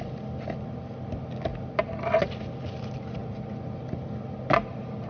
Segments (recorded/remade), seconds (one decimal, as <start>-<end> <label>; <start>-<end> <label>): 0.0-5.1 recorded